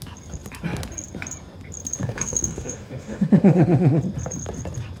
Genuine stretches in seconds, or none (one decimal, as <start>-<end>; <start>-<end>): 0.0-2.0; 4.0-5.0